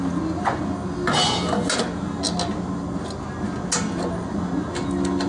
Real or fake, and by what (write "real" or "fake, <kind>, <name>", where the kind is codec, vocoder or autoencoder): real